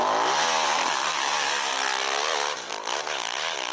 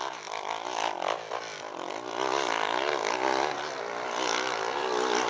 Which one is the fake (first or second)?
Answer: first